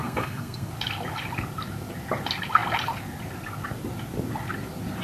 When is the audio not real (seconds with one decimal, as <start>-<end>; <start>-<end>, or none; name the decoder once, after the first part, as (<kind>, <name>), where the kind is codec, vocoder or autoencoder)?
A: 0.0-0.7 (codec, SNAC)